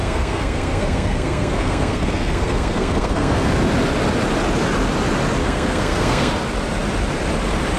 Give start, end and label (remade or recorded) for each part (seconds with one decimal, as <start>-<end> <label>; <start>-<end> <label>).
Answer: 0.0-3.5 remade; 3.5-5.4 recorded; 5.4-6.3 remade; 6.3-7.8 recorded